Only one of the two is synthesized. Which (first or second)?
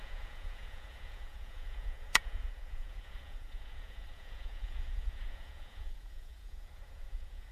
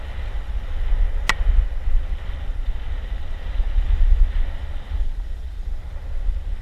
first